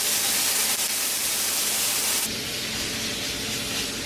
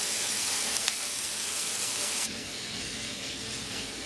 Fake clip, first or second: second